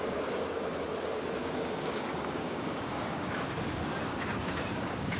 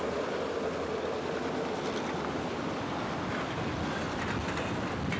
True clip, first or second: second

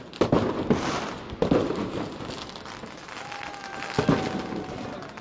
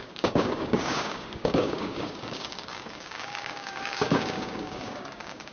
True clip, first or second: first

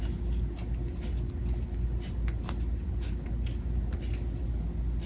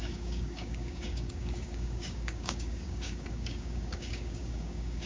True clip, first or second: first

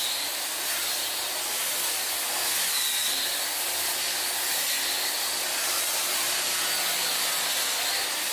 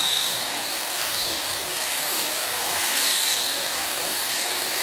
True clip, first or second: first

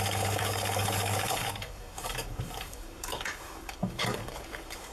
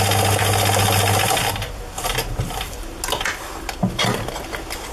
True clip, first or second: second